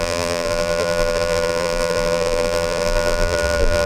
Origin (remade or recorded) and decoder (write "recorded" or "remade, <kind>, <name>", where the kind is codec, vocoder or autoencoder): remade, vocoder, BigVGAN v2